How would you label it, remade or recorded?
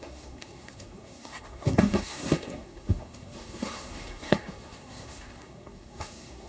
remade